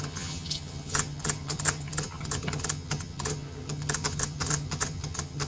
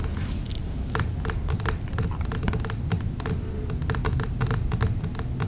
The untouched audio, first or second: second